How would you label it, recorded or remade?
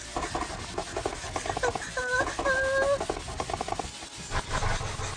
recorded